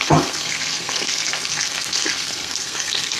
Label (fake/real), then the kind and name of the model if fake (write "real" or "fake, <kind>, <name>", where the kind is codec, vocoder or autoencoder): fake, codec, SNAC